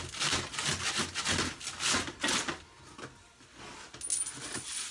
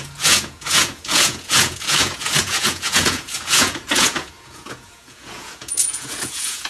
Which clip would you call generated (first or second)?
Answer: second